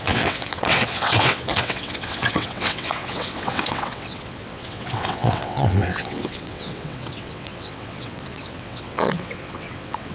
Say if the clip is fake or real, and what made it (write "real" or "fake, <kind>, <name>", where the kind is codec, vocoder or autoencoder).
fake, vocoder, WaveNeXt